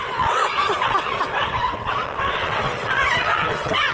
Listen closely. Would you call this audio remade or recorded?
remade